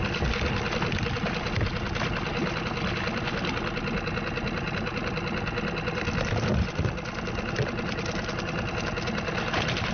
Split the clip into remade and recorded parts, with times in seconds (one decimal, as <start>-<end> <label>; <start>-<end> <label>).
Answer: 0.0-6.5 recorded; 6.5-8.7 remade; 8.7-9.9 recorded